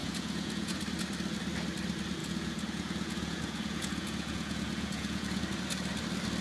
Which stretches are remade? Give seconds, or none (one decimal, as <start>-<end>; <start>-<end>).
0.0-0.8; 2.2-5.4